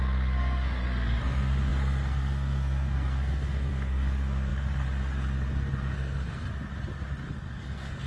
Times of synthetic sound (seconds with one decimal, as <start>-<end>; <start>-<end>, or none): 0.0-6.5; 7.3-8.1